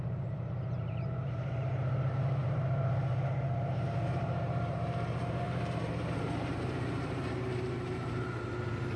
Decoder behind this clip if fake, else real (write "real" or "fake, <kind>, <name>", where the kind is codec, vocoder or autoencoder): fake, vocoder, BigVGAN v2